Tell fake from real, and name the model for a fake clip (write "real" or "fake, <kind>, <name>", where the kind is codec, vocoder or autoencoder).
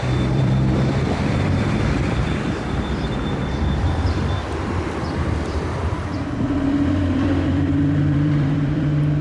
fake, vocoder, BigVGAN v2